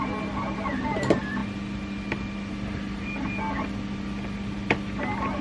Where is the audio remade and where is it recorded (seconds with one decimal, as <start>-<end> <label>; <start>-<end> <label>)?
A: 0.0-5.4 recorded